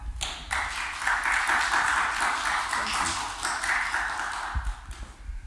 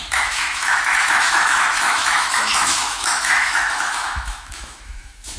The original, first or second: first